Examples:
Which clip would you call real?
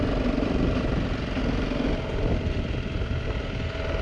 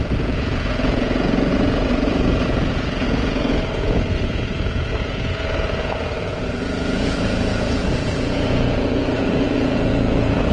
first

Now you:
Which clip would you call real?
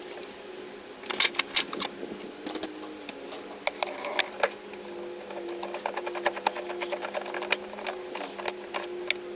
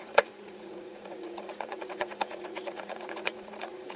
first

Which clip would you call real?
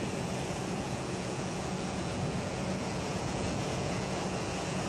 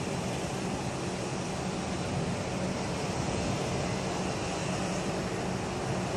second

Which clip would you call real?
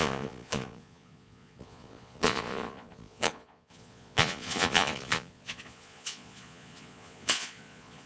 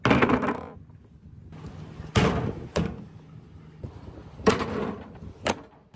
second